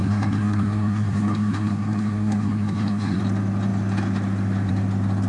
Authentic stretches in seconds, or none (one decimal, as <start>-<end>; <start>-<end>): 3.2-5.3